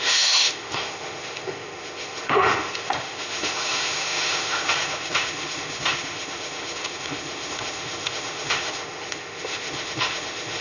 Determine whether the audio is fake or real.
fake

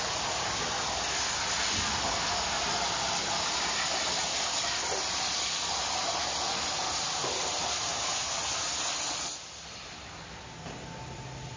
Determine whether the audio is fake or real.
real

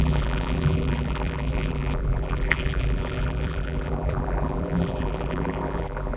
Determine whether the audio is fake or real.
fake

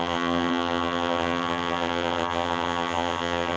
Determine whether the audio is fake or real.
fake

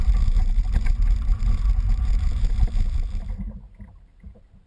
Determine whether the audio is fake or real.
fake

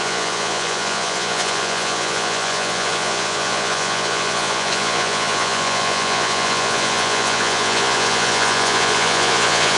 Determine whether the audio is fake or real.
fake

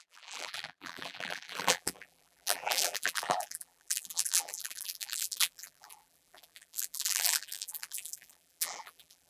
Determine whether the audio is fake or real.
fake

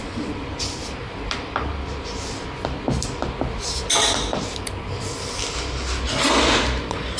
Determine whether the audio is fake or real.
real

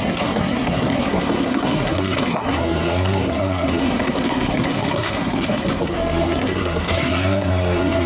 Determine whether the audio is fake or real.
fake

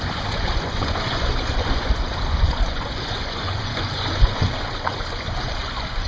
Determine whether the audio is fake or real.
fake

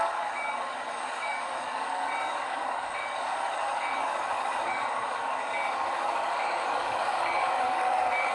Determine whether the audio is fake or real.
fake